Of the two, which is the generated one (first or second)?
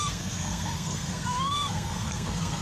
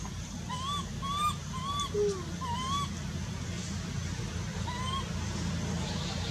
first